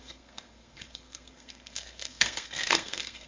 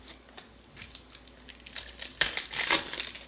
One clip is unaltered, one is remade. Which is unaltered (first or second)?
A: second